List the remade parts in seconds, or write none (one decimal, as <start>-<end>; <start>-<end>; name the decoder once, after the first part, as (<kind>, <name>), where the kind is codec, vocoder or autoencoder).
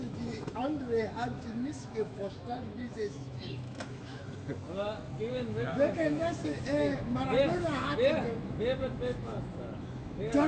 0.0-4.2 (autoencoder, DAC-VAE); 5.3-10.5